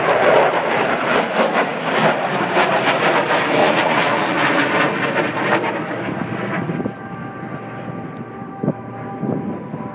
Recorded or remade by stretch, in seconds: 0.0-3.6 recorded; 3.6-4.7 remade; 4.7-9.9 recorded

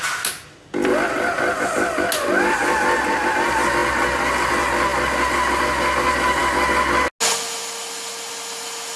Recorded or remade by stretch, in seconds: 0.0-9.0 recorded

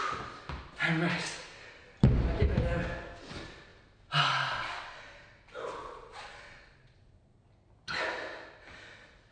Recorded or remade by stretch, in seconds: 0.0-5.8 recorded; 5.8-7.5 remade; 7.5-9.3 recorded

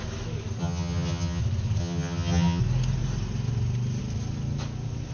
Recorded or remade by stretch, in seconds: 0.0-0.6 recorded; 0.6-1.4 remade; 1.4-1.8 recorded; 1.8-2.6 remade; 2.6-5.1 recorded

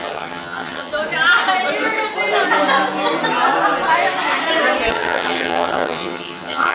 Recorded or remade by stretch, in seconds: 0.0-0.9 remade; 0.9-4.9 recorded; 4.9-6.7 remade